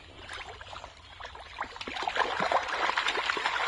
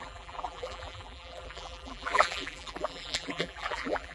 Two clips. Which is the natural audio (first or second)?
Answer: first